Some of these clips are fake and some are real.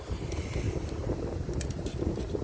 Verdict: fake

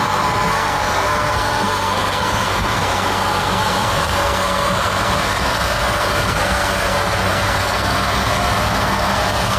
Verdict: fake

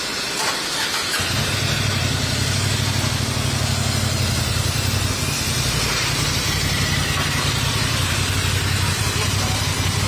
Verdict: real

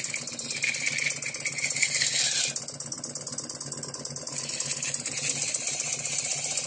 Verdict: real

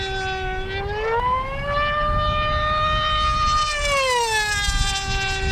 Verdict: real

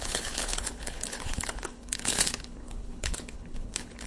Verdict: fake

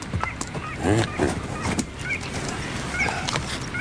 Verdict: real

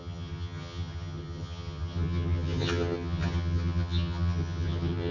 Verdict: fake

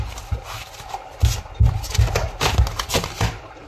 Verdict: real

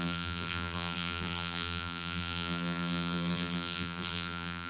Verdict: fake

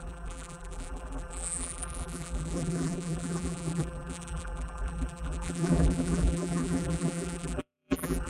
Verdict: fake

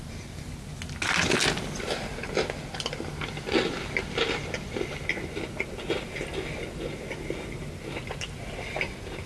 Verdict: real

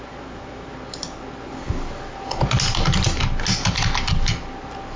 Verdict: real